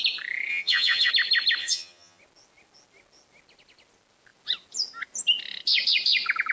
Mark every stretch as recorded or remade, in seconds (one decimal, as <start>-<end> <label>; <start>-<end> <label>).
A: 0.0-0.5 recorded; 0.5-1.1 remade; 1.1-1.6 recorded; 1.6-2.2 remade; 2.2-6.5 recorded